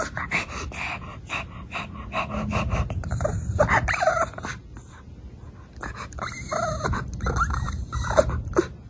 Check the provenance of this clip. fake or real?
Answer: real